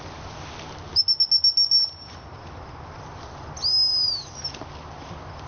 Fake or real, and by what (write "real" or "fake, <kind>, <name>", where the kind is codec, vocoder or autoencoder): real